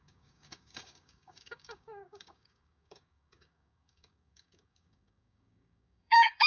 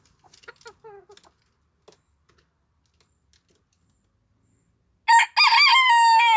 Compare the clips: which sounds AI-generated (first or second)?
first